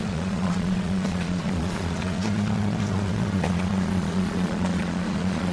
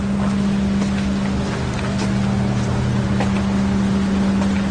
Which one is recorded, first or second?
second